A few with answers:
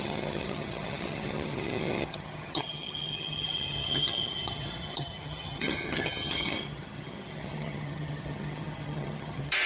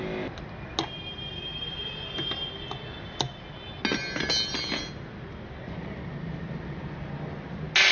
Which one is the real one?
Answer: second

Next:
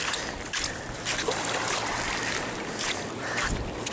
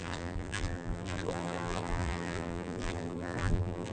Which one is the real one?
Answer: first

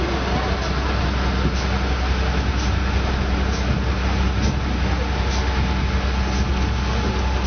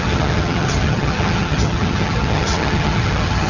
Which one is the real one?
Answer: first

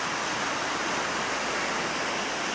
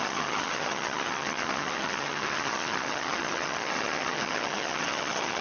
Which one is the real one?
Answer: first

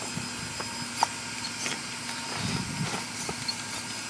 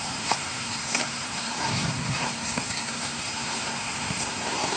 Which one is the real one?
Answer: first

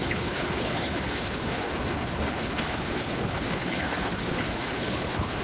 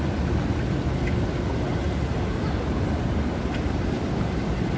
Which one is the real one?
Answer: second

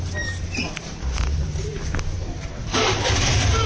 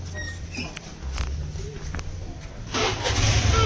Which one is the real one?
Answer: second